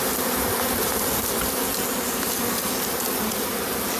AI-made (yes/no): no